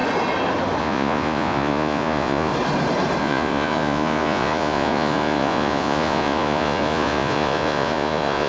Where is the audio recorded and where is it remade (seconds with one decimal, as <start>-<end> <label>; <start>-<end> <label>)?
0.0-0.8 recorded; 0.8-2.5 remade; 2.5-3.2 recorded; 3.2-8.5 remade